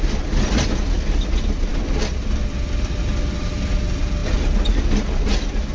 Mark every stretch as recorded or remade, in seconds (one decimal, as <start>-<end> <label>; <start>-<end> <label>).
0.0-5.7 recorded